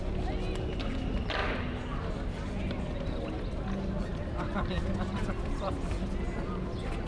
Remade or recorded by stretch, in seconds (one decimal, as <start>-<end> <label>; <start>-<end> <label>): 0.0-7.1 recorded